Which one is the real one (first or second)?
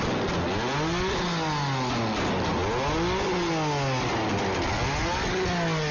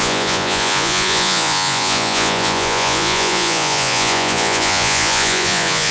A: first